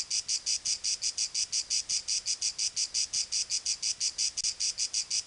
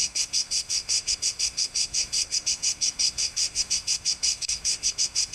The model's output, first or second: second